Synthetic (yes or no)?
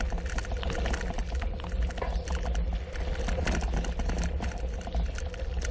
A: no